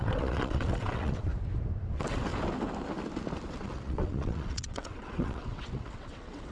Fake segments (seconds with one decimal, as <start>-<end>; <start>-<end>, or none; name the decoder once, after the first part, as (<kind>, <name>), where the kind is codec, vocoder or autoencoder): 0.0-1.3 (vocoder, WaveNeXt); 1.9-2.3; 3.6-6.5